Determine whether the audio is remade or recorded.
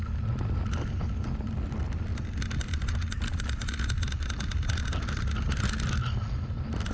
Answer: recorded